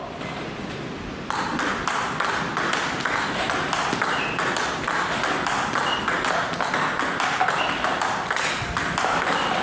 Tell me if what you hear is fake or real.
real